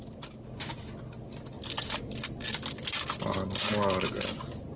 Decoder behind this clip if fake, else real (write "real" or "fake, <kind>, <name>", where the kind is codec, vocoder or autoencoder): real